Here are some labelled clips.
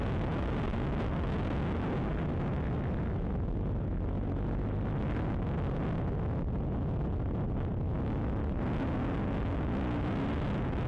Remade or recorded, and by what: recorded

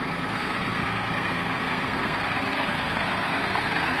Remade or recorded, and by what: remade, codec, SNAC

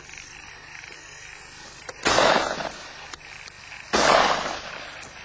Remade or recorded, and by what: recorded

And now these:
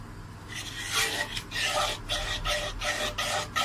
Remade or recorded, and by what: recorded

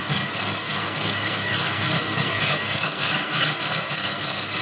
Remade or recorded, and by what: remade, codec, SNAC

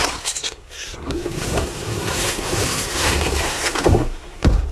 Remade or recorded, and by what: remade, codec, SNAC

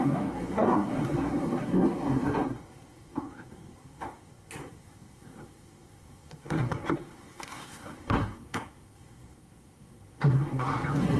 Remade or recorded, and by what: remade, codec, SNAC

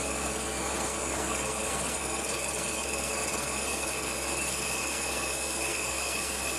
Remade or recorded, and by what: remade, codec, SNAC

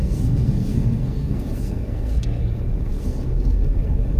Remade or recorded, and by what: remade, codec, SNAC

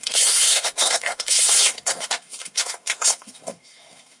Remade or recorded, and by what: remade, codec, SNAC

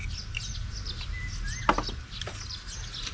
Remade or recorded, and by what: recorded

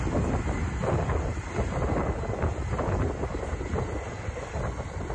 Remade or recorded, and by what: recorded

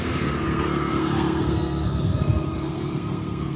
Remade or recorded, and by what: remade, codec, SNAC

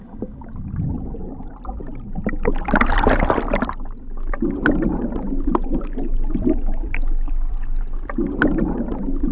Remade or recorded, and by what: recorded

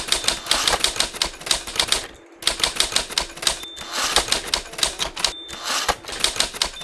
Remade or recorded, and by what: recorded